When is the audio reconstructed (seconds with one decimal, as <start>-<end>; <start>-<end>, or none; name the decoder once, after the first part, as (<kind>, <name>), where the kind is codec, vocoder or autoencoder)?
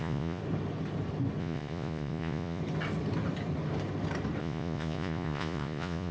0.0-0.4 (vocoder, Vocos); 1.4-2.6; 4.4-6.1